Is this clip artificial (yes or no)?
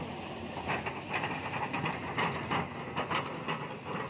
no